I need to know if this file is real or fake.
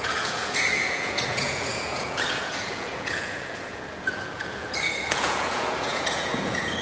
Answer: fake